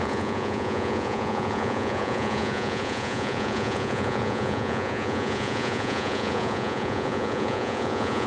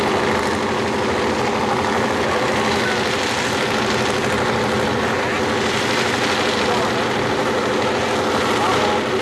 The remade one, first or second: first